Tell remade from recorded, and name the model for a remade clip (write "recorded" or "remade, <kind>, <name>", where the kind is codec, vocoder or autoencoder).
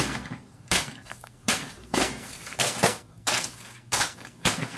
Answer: remade, codec, SNAC